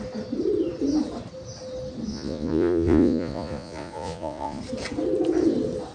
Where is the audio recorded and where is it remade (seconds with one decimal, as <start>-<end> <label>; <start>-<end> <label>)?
0.0-2.1 recorded; 2.1-4.6 remade; 4.6-5.9 recorded